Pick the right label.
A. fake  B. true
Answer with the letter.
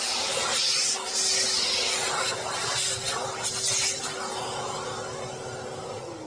B